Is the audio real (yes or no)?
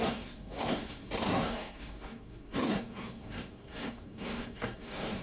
no